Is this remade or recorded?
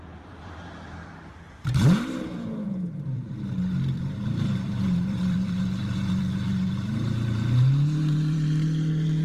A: remade